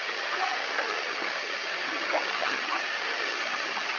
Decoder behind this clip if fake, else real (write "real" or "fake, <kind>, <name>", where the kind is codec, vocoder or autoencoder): fake, vocoder, HiFi-GAN